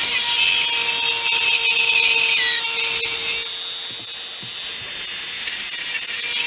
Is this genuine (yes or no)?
yes